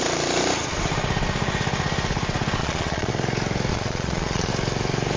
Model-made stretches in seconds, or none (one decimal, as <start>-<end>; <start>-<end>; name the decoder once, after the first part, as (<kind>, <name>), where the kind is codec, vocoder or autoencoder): 2.6-3.1 (vocoder, Vocos); 3.7-4.5